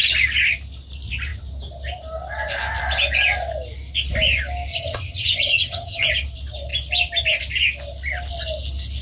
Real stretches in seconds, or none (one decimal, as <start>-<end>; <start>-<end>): 0.0-4.7; 6.1-9.0